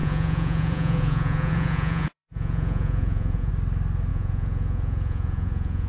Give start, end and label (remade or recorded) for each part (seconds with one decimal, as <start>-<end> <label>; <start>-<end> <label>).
0.0-3.5 remade; 3.5-4.1 recorded; 4.1-5.9 remade